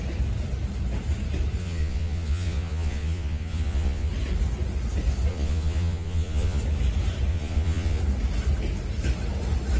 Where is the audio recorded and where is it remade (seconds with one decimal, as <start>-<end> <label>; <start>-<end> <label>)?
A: 0.0-1.6 recorded; 1.6-4.1 remade; 4.1-5.3 recorded; 5.3-6.6 remade; 6.6-7.3 recorded; 7.3-8.0 remade; 8.0-9.8 recorded